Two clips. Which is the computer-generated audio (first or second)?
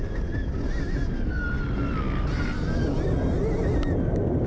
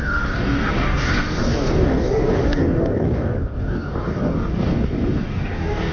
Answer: second